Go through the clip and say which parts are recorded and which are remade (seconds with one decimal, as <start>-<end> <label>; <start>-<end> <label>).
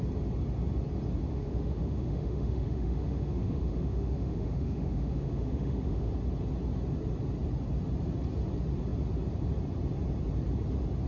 0.0-1.3 recorded; 1.3-6.1 remade; 6.1-11.1 recorded